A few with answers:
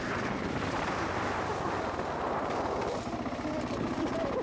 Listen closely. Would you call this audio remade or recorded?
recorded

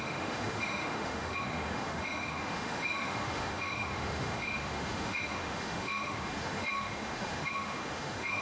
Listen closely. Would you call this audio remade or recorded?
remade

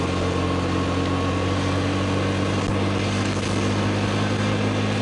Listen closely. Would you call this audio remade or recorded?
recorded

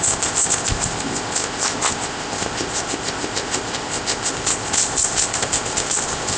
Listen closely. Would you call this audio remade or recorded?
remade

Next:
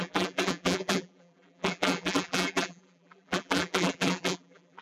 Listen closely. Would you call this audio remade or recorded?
remade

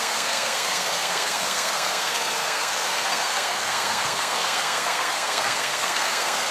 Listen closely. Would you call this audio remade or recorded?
remade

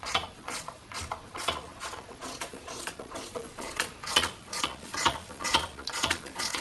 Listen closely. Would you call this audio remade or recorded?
remade